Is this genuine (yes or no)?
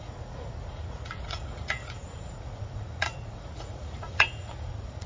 no